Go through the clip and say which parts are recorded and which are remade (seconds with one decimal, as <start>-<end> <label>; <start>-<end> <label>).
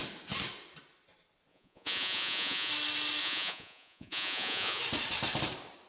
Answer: 0.0-1.5 recorded; 1.5-2.7 remade; 2.7-3.2 recorded; 3.2-4.8 remade; 4.8-5.9 recorded